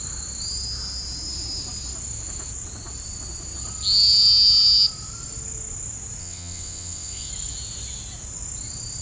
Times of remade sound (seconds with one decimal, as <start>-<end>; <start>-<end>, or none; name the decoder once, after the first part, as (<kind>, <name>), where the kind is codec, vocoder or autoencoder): 6.2-7.3 (vocoder, WaveNeXt)